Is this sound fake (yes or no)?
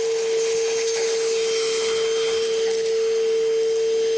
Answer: no